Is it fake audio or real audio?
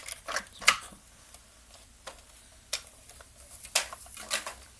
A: real